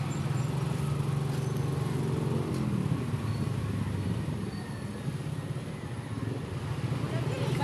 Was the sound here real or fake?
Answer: real